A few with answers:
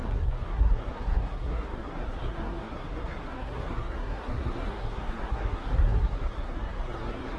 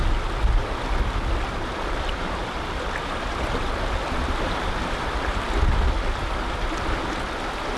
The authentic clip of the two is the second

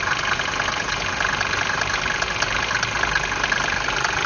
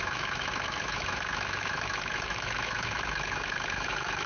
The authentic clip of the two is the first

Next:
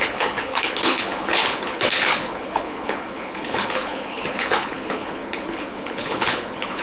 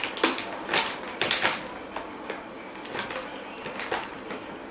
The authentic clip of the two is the second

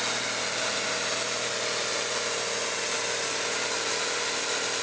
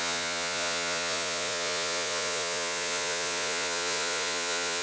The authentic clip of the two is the first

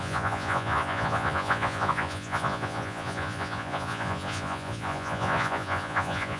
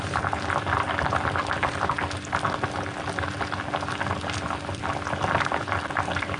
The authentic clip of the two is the second